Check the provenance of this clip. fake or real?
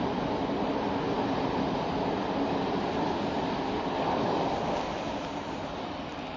real